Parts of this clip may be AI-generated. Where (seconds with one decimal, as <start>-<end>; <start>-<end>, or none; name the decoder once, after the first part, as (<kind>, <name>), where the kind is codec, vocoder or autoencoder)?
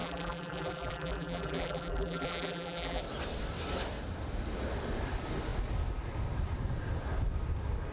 0.0-3.0 (vocoder, BigVGAN v2)